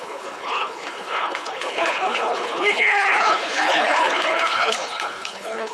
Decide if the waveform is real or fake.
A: fake